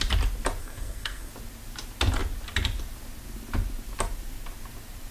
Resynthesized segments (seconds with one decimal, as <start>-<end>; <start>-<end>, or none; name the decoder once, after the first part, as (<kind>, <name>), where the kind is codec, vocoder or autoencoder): 0.6-1.3 (codec, SNAC)